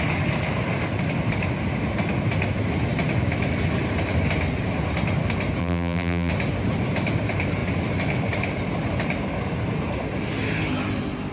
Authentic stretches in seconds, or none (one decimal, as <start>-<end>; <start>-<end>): 0.0-5.6; 6.3-11.3